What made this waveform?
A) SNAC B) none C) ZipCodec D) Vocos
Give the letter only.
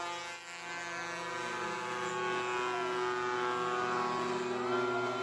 B